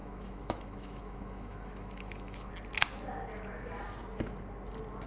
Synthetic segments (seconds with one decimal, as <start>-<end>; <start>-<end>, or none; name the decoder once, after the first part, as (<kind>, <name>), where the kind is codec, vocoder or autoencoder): 0.0-2.5 (autoencoder, DAC-VAE)